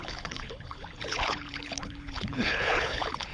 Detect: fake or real fake